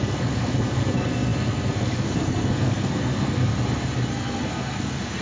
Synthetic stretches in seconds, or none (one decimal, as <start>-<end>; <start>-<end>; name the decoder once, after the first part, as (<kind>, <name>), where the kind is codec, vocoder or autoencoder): 0.0-3.5 (codec, SNAC); 4.1-5.2